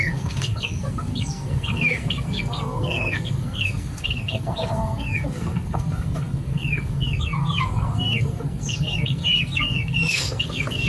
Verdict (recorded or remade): remade